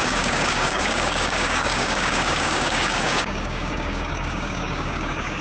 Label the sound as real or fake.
fake